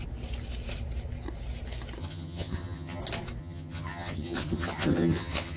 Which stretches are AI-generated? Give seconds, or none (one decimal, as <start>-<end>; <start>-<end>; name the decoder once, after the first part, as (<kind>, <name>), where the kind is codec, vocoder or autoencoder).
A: 2.0-3.0 (vocoder, HiFi-GAN); 3.4-5.6